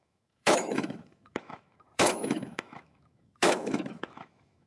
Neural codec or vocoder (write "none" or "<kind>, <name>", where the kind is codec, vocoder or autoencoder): autoencoder, DAC-VAE